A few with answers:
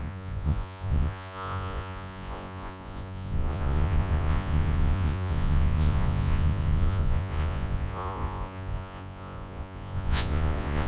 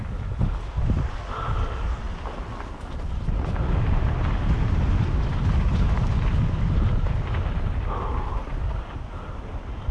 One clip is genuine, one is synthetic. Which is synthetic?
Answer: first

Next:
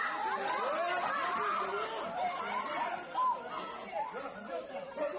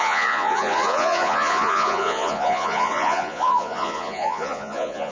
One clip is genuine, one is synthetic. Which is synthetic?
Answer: second